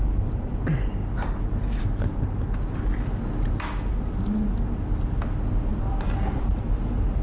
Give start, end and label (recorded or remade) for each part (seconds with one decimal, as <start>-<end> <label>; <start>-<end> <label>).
0.0-7.2 recorded